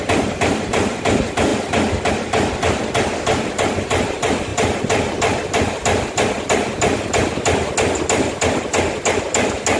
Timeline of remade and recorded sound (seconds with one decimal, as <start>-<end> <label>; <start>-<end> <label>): 0.0-9.8 recorded